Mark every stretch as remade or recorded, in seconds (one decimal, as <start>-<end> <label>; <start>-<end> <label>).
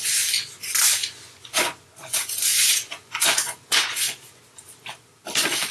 0.0-1.0 recorded; 1.0-4.4 remade; 4.4-5.7 recorded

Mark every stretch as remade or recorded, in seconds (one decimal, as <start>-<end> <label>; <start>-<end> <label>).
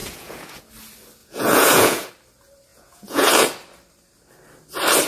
0.0-0.7 remade; 0.7-1.2 recorded; 1.2-2.1 remade; 2.1-2.7 recorded; 2.7-3.3 remade; 3.3-5.1 recorded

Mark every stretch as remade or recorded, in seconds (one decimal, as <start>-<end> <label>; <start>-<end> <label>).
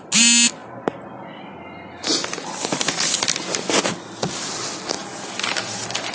0.0-6.1 recorded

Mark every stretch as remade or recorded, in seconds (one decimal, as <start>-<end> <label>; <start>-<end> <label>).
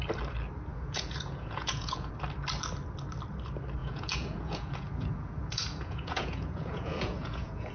0.0-0.7 recorded; 0.7-2.1 remade; 2.1-3.8 recorded; 3.8-7.7 remade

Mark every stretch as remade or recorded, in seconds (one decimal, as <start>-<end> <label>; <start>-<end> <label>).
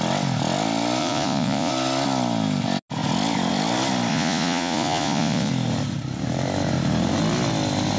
0.0-1.0 recorded; 1.0-1.7 remade; 1.7-4.1 recorded; 4.1-5.5 remade; 5.5-8.0 recorded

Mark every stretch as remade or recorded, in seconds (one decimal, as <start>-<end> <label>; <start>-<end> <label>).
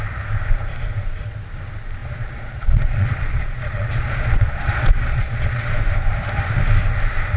0.0-2.0 recorded; 2.0-5.7 remade; 5.7-7.4 recorded